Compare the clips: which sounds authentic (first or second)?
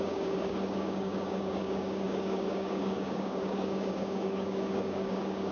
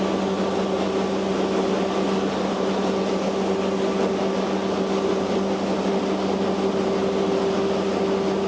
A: second